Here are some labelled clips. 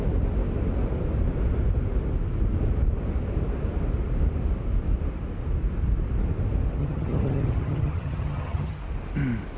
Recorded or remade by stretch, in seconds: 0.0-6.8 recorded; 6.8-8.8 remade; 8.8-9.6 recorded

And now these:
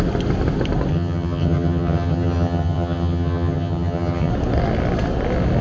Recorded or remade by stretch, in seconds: 0.0-0.9 recorded; 0.9-4.3 remade; 4.3-5.6 recorded

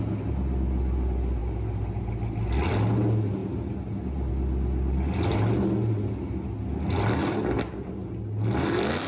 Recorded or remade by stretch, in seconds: 0.0-9.1 recorded

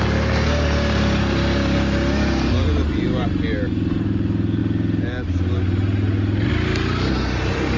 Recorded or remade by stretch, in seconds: 0.0-7.8 recorded

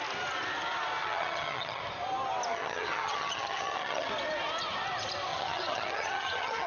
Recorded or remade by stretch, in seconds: 0.0-1.0 recorded; 1.0-1.8 remade; 1.8-2.5 recorded; 2.5-4.1 remade; 4.1-5.3 recorded; 5.3-6.7 remade